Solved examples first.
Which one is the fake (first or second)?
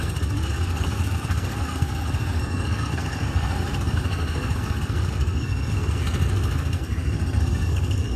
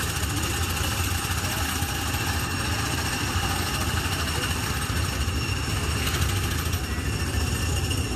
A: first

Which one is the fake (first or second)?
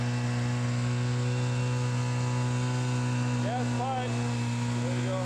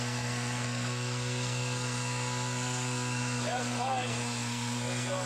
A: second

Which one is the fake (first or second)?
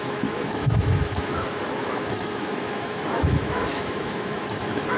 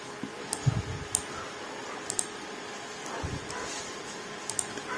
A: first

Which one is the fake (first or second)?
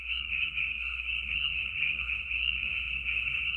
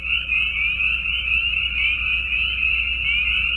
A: first